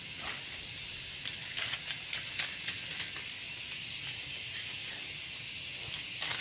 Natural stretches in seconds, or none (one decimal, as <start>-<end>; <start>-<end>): 0.0-6.4